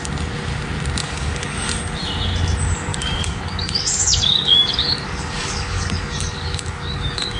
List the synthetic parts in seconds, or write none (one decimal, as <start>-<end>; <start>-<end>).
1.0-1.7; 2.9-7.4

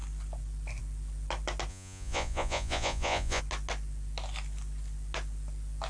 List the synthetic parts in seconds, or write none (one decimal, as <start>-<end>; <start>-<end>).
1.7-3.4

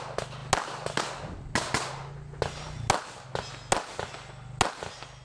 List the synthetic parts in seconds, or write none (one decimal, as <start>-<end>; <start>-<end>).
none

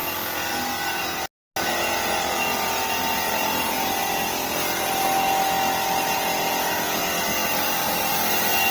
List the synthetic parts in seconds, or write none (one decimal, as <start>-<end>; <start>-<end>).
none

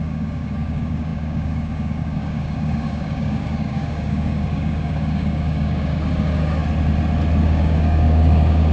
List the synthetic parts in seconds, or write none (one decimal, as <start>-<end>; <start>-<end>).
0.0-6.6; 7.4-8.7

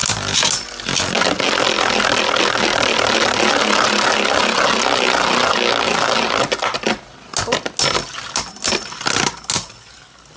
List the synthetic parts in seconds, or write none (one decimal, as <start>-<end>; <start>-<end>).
none

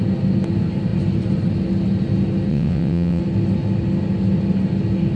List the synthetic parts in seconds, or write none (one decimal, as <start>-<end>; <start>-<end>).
2.5-3.2